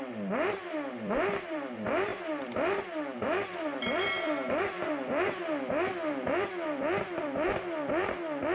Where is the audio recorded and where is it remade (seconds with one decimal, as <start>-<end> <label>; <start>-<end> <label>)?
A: 0.0-8.5 remade